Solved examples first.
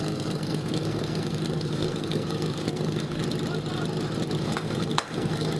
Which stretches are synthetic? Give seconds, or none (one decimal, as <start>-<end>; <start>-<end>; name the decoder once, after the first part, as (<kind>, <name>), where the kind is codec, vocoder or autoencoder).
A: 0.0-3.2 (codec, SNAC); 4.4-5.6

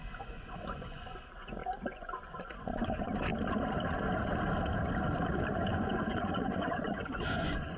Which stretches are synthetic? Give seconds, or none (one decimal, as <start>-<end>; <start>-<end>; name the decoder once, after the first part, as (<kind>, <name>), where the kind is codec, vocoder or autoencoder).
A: 0.0-3.3 (vocoder, Vocos); 5.6-7.8

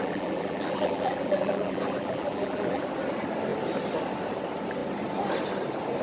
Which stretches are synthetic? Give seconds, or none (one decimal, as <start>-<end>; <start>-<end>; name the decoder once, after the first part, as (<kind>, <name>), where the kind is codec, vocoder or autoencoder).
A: 0.0-2.8 (vocoder, BigVGAN v2)

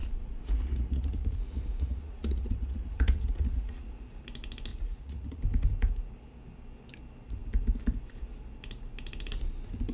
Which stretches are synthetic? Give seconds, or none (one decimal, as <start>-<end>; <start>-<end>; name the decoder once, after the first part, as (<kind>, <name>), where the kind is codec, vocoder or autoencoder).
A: 0.0-4.2 (vocoder, Vocos); 4.7-5.4